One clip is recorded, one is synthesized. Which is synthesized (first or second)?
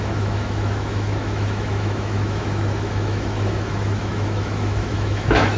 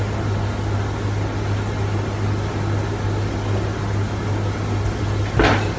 first